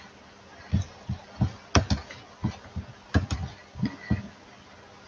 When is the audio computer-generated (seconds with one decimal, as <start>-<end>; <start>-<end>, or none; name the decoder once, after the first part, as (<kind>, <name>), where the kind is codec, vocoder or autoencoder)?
0.5-1.2 (vocoder, BigVGAN v2)